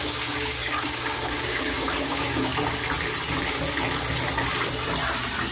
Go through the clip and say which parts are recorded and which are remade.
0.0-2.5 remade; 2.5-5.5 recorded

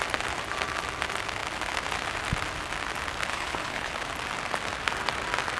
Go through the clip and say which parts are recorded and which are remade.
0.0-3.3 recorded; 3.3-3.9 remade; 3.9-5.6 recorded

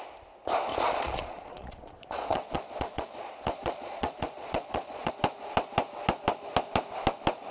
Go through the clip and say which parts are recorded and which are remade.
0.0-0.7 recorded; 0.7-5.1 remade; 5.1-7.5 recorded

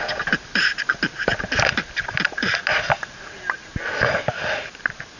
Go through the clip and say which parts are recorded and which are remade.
0.0-5.2 recorded

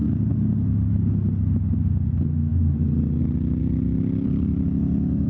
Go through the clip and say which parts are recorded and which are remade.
0.0-5.3 recorded

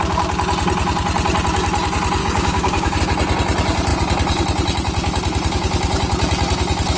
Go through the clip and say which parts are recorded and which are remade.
0.0-2.2 recorded; 2.2-3.0 remade; 3.0-7.0 recorded

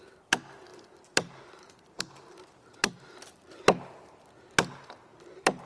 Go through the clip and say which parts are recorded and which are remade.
0.0-0.7 recorded; 0.7-2.0 remade; 2.0-5.1 recorded; 5.1-5.7 remade

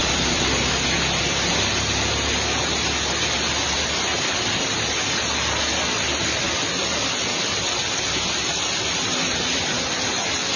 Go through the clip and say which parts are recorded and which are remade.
0.0-0.7 remade; 0.7-4.1 recorded; 4.1-4.7 remade; 4.7-10.6 recorded